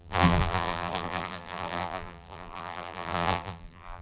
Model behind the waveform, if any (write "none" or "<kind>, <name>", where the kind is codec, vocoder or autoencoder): vocoder, BigVGAN v2